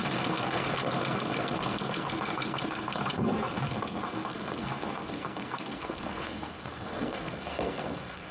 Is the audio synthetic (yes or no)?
yes